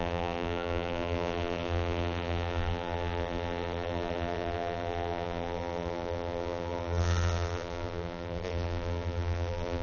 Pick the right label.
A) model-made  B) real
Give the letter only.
A